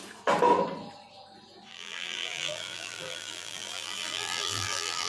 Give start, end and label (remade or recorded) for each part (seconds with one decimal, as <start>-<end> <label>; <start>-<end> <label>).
0.0-1.7 recorded; 1.7-5.1 remade